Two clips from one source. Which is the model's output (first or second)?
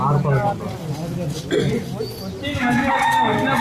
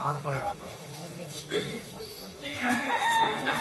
second